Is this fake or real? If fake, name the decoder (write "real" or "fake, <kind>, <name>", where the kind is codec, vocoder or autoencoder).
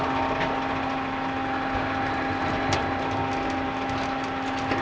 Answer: real